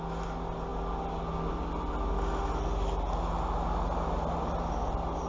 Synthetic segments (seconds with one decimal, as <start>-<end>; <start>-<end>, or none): none